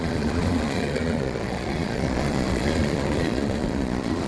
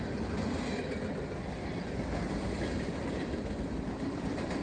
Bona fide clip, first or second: second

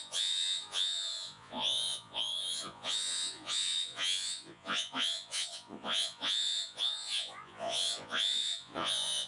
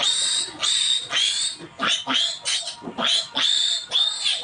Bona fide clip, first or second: second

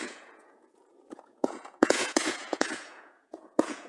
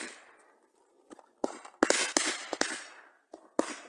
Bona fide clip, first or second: second